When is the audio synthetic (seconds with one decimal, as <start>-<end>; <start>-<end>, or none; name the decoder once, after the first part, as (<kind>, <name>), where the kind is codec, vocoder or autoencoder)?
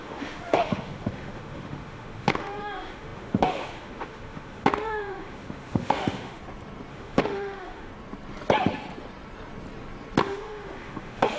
0.0-6.4 (autoencoder, DAC-VAE); 6.9-7.9; 10.2-11.4